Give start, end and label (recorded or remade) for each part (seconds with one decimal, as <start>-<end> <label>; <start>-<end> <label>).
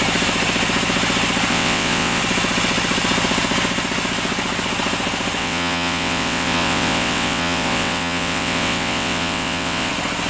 0.0-1.5 recorded; 1.5-2.2 remade; 2.2-5.4 recorded; 5.4-9.9 remade; 9.9-10.3 recorded